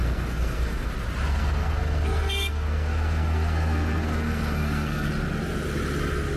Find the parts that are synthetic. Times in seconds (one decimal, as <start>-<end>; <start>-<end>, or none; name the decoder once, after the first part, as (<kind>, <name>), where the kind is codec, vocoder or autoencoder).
0.0-0.9 (codec, SNAC); 1.3-5.1